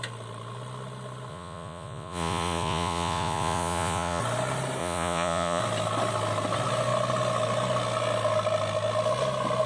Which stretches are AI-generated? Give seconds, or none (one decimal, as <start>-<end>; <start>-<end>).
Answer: 1.3-4.2; 4.8-5.6